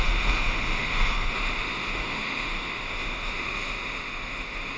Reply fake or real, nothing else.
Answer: fake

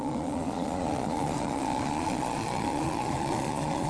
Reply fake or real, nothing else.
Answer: fake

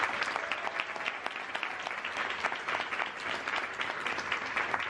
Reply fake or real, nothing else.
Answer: real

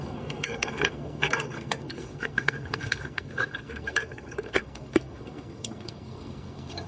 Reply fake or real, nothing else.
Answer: fake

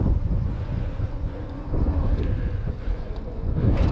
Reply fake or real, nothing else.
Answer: fake